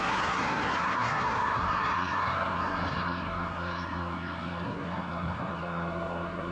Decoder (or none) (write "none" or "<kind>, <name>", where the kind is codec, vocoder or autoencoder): codec, SNAC